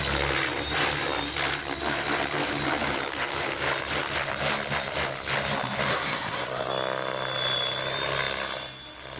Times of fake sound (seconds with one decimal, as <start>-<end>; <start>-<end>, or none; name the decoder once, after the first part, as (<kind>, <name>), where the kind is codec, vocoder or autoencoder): 5.9-6.7 (codec, SNAC)